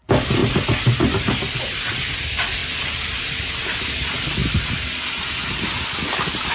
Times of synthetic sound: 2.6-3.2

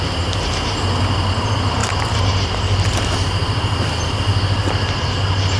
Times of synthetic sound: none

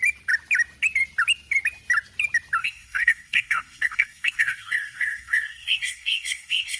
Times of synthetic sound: 2.6-6.8